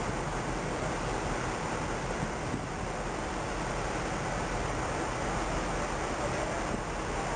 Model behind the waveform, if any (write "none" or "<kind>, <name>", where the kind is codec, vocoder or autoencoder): none